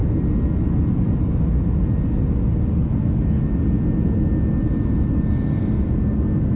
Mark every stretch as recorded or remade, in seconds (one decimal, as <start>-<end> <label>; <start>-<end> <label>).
0.0-6.6 recorded